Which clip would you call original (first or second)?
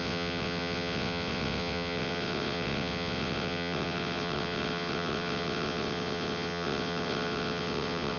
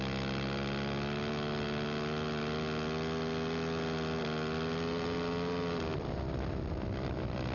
second